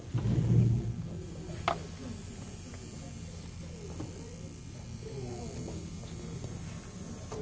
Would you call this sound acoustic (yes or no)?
yes